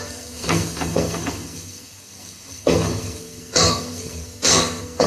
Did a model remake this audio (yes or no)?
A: yes